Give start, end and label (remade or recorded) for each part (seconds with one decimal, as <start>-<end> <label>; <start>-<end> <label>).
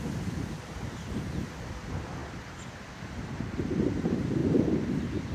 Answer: 0.0-2.2 remade; 2.2-3.7 recorded; 3.7-5.3 remade